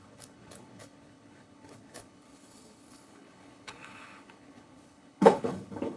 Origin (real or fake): fake